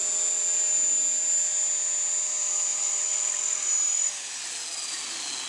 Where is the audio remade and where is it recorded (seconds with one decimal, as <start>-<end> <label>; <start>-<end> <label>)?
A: 0.0-2.7 recorded; 2.7-3.7 remade; 3.7-5.5 recorded